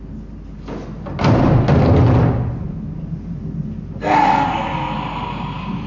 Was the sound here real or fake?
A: real